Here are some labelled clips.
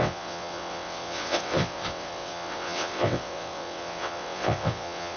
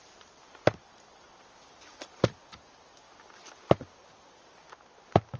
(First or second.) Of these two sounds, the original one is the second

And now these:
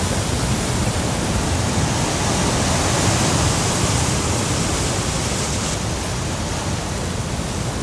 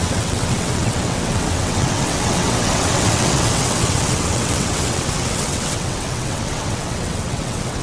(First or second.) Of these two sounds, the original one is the first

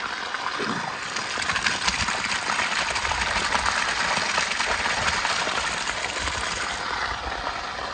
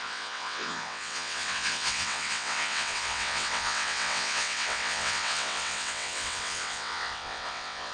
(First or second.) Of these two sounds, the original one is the first